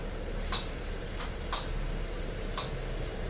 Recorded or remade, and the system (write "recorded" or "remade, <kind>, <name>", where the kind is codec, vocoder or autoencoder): recorded